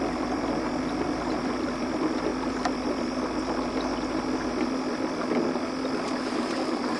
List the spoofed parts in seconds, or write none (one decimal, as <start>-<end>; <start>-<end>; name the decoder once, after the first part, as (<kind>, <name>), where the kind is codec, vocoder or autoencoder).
0.0-2.3 (vocoder, BigVGAN v2); 6.5-7.0